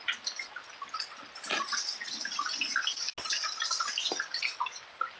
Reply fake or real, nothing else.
real